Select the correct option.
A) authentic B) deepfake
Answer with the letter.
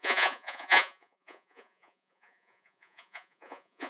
B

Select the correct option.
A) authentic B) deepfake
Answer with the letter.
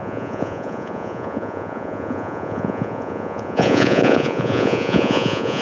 B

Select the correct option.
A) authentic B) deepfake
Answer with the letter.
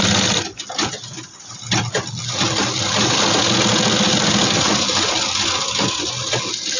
A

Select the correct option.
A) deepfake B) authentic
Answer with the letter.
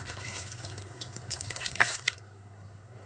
A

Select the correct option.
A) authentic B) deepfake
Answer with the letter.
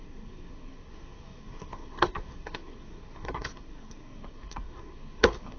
B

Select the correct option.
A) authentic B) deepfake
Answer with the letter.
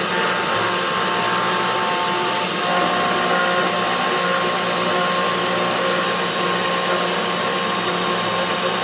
A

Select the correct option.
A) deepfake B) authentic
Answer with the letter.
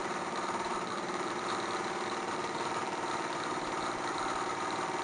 A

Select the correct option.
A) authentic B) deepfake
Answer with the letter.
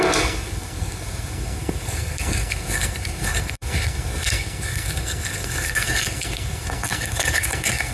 B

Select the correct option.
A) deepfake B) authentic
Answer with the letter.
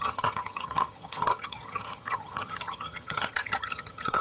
A